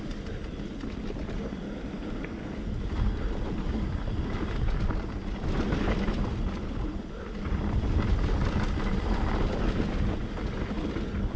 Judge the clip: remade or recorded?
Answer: recorded